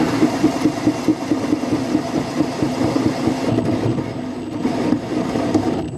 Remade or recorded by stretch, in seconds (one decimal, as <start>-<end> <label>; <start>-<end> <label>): 0.0-6.0 recorded